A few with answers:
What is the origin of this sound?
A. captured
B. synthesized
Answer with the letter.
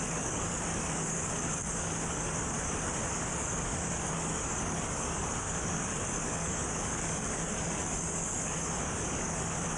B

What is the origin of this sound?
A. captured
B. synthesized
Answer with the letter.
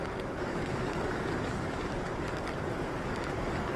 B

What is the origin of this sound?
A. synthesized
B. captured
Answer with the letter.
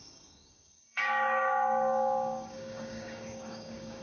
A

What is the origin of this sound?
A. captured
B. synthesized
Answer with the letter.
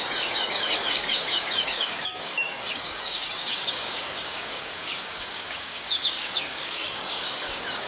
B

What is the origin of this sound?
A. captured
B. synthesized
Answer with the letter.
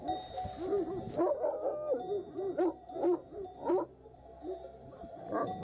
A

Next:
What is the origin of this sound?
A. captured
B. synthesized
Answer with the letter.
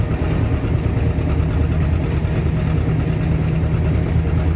A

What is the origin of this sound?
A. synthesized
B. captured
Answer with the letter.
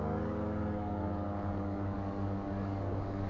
A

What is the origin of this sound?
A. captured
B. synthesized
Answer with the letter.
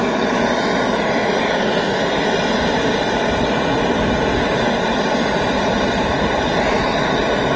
A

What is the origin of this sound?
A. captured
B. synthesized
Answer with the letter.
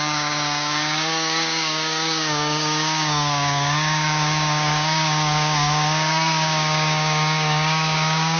B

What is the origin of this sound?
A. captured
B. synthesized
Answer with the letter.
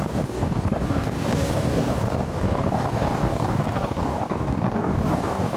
B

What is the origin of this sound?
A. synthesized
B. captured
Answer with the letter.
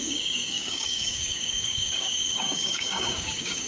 A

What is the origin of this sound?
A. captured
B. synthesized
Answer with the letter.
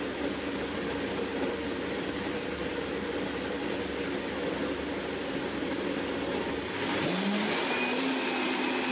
A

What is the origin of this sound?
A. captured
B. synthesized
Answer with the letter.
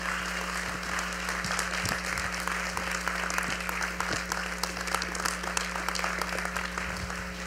A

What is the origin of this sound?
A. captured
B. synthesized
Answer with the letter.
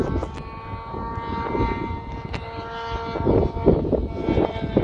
A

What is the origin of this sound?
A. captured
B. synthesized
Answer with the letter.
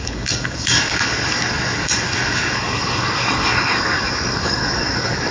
B